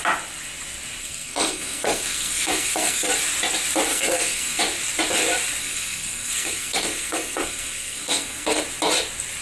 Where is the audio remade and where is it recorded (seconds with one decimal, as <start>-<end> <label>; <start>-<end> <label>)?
0.0-1.0 recorded; 1.0-3.1 remade; 3.1-3.9 recorded; 3.9-4.6 remade; 4.6-5.6 recorded; 5.6-8.6 remade; 8.6-9.4 recorded